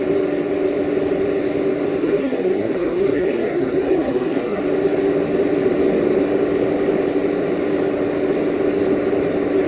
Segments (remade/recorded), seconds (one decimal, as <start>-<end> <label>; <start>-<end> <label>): 0.0-2.0 recorded; 2.0-4.6 remade; 4.6-9.7 recorded

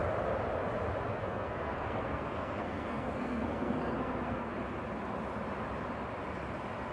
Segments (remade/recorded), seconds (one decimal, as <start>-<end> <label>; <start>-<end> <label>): 0.0-1.1 recorded; 1.1-4.5 remade; 4.5-6.9 recorded

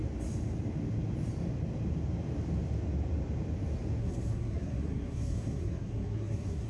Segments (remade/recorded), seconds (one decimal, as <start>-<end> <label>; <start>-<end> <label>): 0.0-4.0 recorded; 4.0-6.7 remade